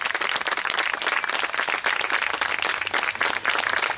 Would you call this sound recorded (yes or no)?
yes